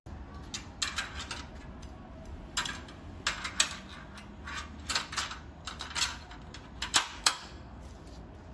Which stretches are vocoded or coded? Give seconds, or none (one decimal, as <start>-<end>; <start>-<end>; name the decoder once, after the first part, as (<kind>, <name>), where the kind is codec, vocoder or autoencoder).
7.2-7.8 (codec, SNAC)